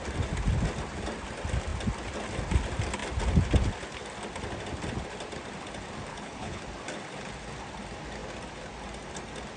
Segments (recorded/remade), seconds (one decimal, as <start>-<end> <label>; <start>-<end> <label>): 0.0-6.1 recorded; 6.1-6.6 remade; 6.6-9.6 recorded